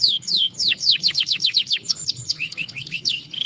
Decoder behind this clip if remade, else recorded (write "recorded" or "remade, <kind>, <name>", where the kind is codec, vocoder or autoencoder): remade, codec, HILCodec